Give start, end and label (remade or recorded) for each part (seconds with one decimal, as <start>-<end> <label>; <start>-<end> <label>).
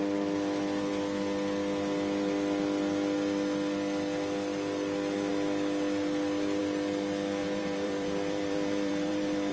0.0-7.4 recorded; 7.4-9.5 remade